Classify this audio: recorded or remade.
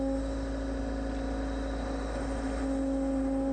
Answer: recorded